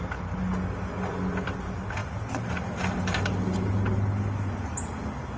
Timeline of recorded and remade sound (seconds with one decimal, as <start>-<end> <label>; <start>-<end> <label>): 0.0-5.4 recorded